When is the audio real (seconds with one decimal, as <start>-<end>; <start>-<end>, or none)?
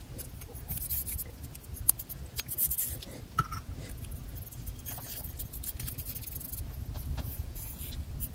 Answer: 0.0-7.3; 7.8-8.3